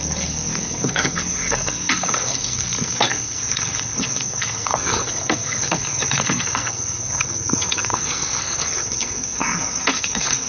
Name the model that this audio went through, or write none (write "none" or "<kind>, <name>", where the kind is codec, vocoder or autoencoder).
codec, SNAC